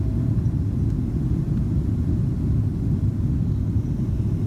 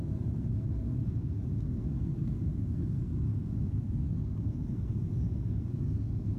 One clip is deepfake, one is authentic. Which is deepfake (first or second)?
second